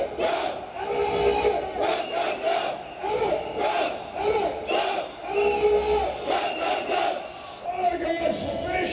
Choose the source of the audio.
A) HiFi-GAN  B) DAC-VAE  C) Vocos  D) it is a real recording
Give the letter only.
D